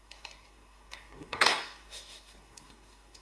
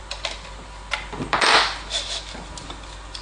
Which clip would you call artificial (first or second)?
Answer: first